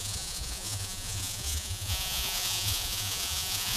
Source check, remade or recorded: remade